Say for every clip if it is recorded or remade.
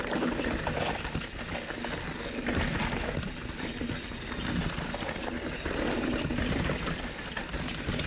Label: recorded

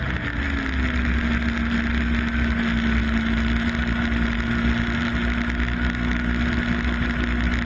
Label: recorded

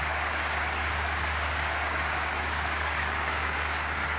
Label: remade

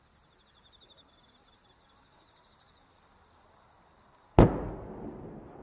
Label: recorded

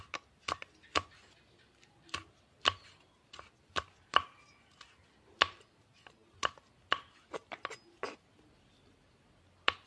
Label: recorded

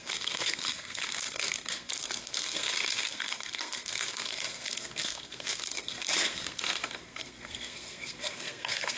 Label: remade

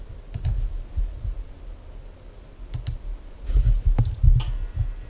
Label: recorded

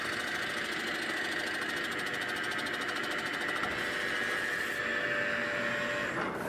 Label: recorded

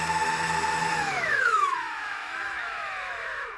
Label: remade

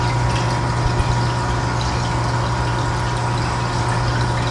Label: recorded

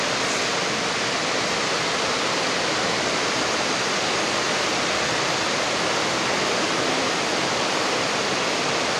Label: recorded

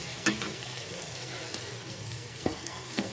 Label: remade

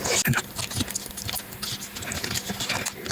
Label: recorded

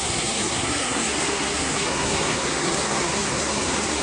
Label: remade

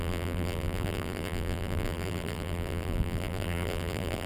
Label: remade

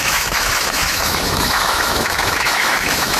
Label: remade